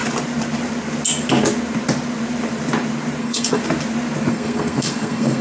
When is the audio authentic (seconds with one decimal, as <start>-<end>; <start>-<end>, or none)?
0.0-3.2; 3.6-4.3